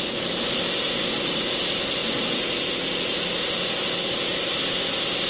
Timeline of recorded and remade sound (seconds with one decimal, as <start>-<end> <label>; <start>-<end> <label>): 0.0-5.3 recorded